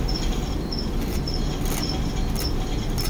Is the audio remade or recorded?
recorded